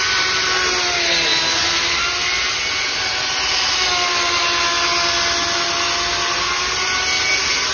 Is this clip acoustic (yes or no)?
yes